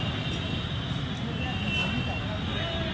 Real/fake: real